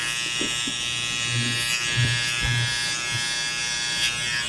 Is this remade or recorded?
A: recorded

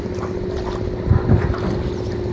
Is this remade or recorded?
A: recorded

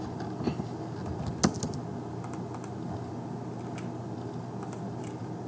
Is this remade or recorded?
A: recorded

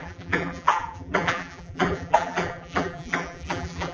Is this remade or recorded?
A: remade